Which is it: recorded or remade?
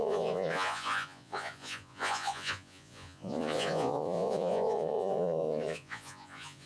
remade